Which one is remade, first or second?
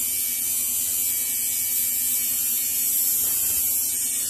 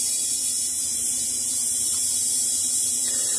second